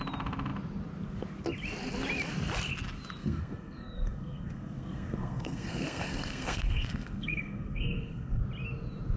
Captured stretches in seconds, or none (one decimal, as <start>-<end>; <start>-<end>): 0.0-3.2; 8.4-9.2